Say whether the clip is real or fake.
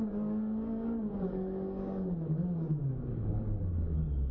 fake